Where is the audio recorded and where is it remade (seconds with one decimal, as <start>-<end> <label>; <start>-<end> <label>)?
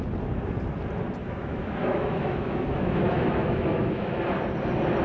0.0-1.2 recorded; 1.2-4.2 remade; 4.2-5.0 recorded